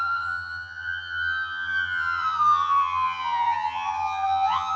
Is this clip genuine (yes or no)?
no